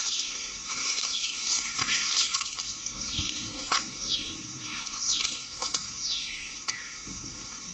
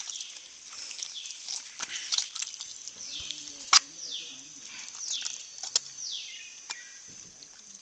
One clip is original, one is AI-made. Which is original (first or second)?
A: second